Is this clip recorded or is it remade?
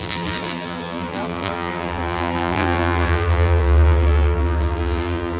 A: remade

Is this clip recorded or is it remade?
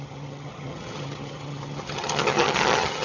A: remade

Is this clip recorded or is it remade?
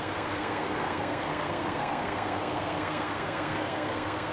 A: remade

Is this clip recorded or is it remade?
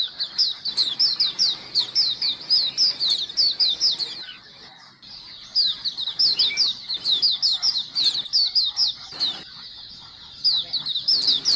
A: recorded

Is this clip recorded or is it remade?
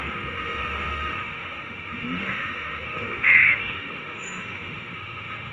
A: remade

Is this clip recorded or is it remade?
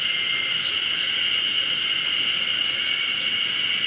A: recorded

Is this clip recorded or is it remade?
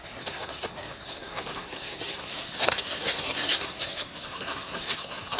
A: remade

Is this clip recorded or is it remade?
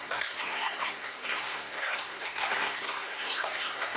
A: remade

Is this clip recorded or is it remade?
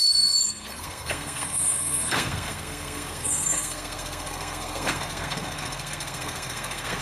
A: remade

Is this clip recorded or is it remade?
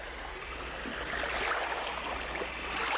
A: recorded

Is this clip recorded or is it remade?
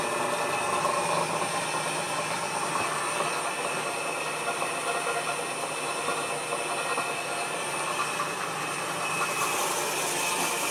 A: recorded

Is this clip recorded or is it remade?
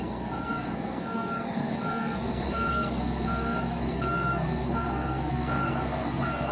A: remade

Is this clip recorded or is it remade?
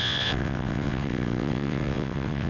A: remade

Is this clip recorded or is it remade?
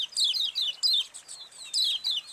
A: recorded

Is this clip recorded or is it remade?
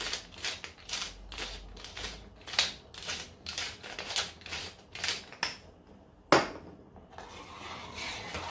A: recorded